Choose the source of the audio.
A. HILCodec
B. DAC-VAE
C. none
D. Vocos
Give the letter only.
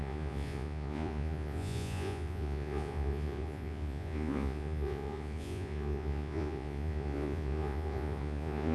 D